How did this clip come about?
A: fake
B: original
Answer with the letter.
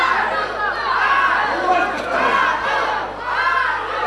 B